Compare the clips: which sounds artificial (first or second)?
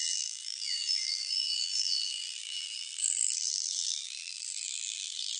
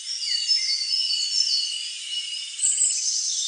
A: first